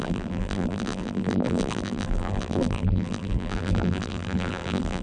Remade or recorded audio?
remade